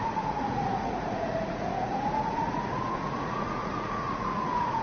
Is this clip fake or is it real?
fake